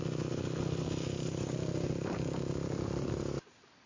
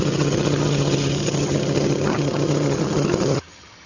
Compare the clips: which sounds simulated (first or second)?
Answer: second